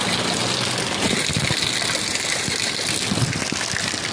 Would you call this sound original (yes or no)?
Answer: yes